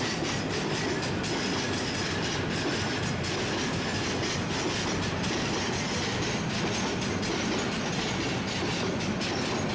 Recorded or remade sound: recorded